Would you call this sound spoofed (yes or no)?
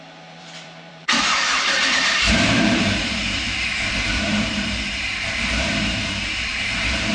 yes